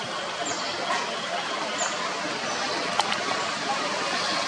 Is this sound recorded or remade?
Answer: recorded